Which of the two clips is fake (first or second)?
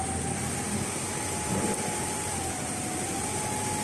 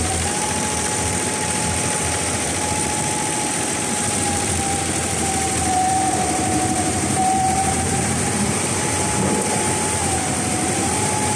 second